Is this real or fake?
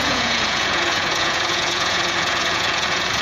fake